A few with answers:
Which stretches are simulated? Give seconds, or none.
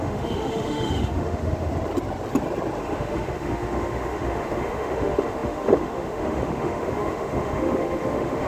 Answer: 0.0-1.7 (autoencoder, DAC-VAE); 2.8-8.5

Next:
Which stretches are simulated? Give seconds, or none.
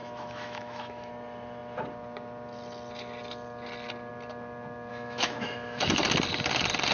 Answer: 0.0-1.1 (autoencoder, DAC-VAE); 4.9-5.8